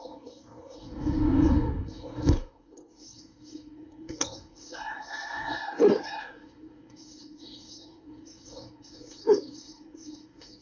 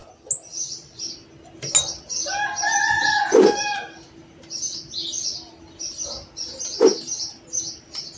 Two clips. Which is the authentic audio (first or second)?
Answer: second